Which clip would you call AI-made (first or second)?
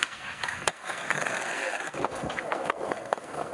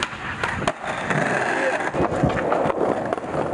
first